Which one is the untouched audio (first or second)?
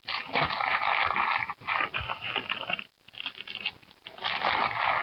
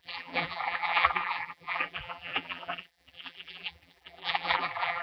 first